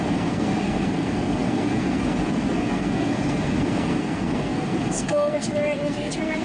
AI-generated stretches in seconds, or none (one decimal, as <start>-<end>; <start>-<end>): 0.0-6.4

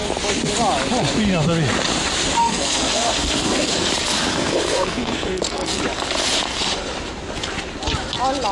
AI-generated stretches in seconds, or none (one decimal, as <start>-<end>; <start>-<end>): 2.4-3.9; 4.3-5.8

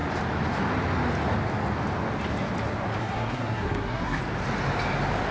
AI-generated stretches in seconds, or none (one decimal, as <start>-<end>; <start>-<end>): 3.0-4.2

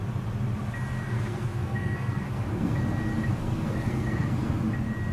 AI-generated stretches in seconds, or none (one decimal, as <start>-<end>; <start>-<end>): 1.0-2.8; 3.3-4.5